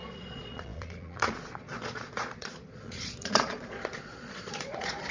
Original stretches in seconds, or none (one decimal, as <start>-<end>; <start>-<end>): none